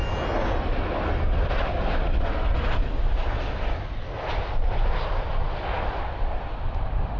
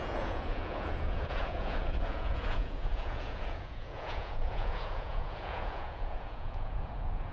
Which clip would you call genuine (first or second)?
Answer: first